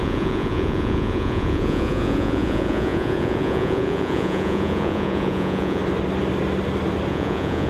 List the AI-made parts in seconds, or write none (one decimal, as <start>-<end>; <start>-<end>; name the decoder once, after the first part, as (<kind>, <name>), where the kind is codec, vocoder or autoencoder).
0.0-5.8 (vocoder, Vocos); 7.1-7.7